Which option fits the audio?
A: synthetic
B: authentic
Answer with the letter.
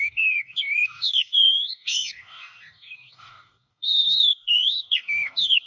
A